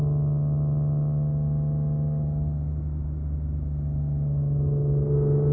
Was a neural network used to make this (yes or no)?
no